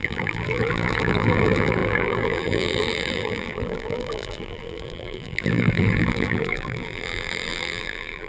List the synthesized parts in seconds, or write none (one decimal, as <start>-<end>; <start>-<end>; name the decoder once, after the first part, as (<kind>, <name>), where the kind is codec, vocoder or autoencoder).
0.0-8.3 (vocoder, BigVGAN v2)